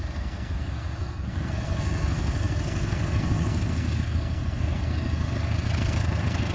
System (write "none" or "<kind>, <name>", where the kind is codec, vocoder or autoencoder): codec, SNAC